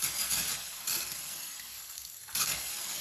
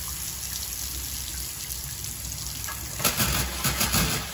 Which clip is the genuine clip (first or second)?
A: second